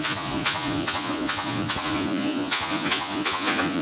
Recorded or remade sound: remade